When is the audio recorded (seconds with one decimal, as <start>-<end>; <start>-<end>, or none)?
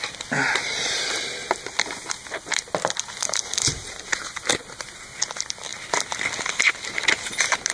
0.0-7.7